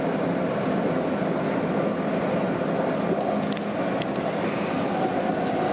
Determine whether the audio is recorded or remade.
recorded